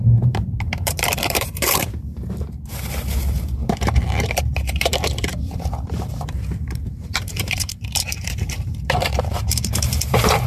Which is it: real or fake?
fake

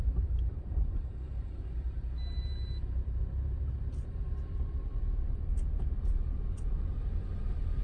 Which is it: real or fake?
fake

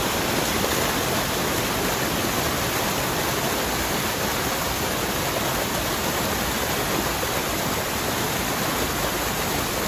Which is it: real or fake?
real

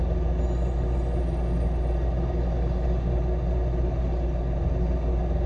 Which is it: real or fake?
real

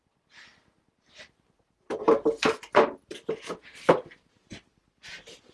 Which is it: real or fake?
fake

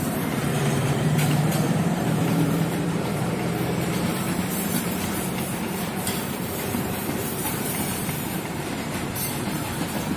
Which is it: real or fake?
fake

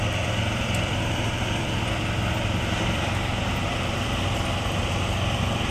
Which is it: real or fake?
fake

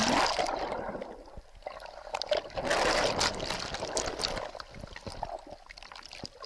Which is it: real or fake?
real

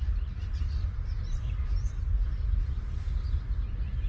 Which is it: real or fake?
real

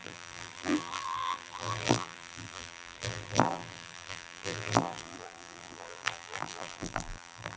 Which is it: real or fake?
fake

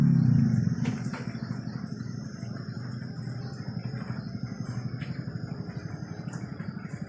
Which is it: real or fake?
real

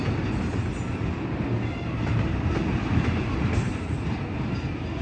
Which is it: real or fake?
real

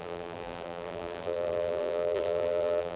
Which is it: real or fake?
fake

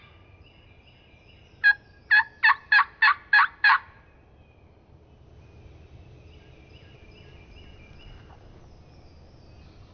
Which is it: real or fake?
real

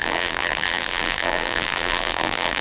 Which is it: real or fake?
fake